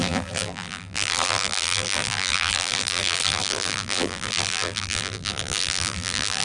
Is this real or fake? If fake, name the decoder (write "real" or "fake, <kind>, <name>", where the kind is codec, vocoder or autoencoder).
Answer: fake, vocoder, BigVGAN v2